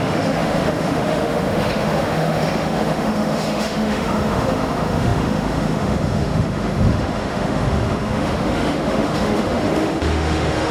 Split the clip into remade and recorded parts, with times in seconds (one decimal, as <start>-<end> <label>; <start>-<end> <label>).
0.0-10.7 remade